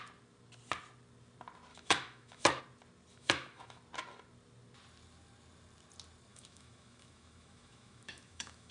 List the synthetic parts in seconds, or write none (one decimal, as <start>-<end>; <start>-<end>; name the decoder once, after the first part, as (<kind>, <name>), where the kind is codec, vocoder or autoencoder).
1.7-2.6 (autoencoder, DAC-VAE); 3.1-3.8; 6.3-8.7